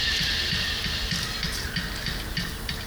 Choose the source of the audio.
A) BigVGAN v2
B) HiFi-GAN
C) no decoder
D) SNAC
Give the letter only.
C